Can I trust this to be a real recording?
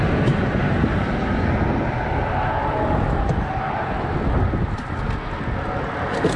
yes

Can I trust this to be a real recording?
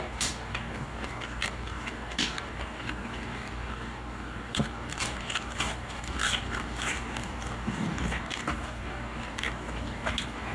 no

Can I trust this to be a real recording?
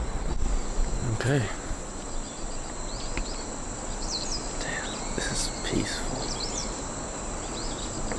yes